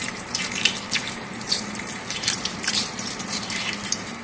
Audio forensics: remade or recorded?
remade